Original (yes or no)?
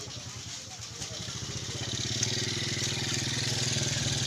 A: yes